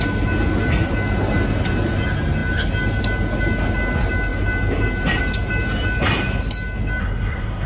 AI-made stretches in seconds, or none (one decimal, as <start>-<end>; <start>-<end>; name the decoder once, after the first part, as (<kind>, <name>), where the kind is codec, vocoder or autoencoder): 7.0-7.7 (codec, SNAC)